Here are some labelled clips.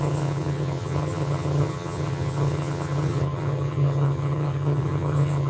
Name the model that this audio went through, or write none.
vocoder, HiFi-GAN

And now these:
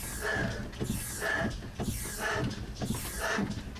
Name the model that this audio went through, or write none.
none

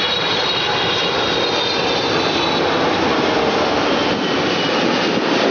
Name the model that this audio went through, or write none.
none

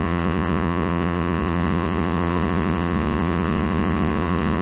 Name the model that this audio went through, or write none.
vocoder, Vocos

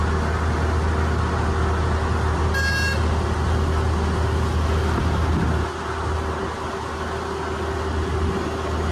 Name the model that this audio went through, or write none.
none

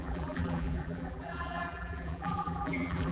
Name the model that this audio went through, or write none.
vocoder, BigVGAN v2